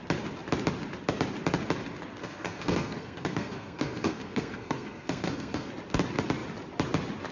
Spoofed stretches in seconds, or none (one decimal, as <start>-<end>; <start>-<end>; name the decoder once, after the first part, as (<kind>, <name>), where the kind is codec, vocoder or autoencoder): 2.2-5.7 (codec, SNAC)